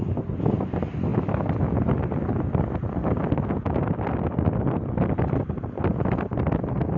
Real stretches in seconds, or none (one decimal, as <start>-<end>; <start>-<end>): 0.0-7.0